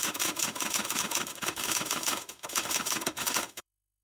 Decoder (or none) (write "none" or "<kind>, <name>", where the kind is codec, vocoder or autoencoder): autoencoder, DAC-VAE